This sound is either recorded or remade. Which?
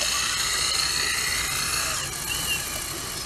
recorded